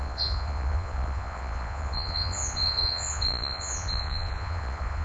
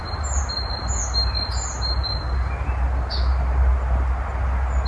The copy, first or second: first